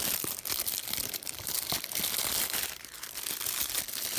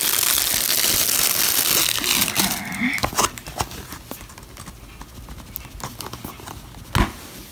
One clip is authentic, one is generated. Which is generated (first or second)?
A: first